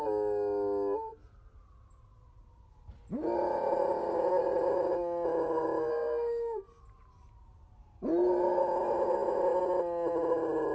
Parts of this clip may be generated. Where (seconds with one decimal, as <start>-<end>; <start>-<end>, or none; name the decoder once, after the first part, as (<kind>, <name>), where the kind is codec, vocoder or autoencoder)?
5.9-6.8 (codec, SNAC)